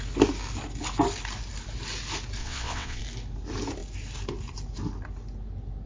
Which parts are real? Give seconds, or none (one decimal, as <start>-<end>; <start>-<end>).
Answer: 0.0-2.4; 3.0-5.9